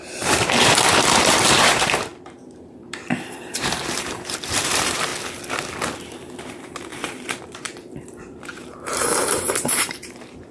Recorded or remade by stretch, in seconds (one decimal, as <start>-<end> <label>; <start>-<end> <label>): 0.0-5.1 remade; 5.1-6.5 recorded; 6.5-10.5 remade